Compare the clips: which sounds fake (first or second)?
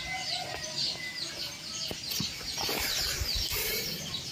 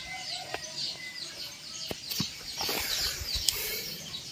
second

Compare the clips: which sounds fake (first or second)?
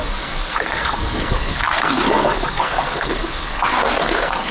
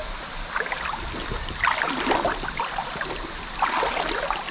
first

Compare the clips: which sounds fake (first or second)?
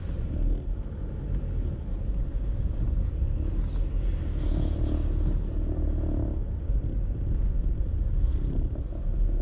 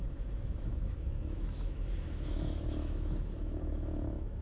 second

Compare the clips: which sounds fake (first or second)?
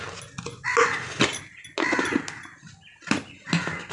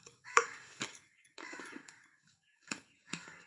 second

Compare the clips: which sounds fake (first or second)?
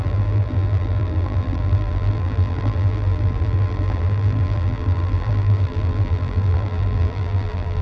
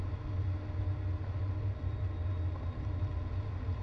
first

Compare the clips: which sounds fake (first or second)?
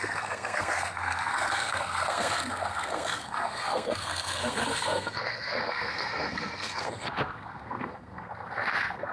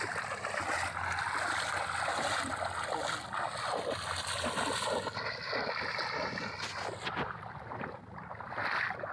first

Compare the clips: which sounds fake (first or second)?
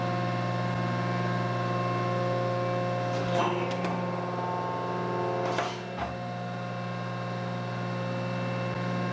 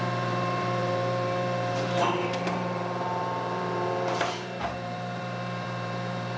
second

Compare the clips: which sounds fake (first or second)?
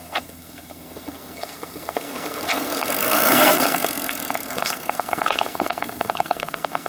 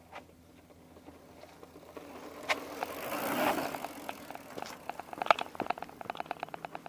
first